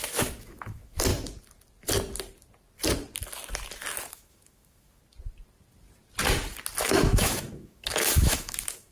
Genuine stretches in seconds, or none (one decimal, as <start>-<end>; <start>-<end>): 1.1-4.1; 5.0-6.8